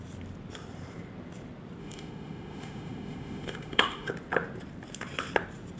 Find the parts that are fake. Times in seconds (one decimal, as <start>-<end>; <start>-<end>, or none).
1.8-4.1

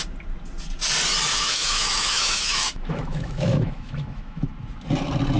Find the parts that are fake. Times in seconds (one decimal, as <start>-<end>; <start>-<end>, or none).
1.3-4.5

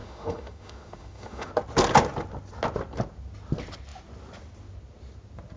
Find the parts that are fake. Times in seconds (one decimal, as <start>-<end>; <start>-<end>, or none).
0.0-1.5

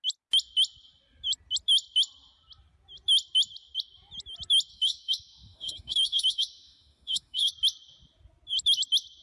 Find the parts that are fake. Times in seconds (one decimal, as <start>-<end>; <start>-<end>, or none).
4.7-7.5

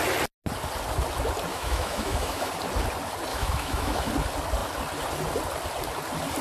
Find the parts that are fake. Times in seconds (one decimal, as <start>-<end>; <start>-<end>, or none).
1.5-2.5; 3.3-4.1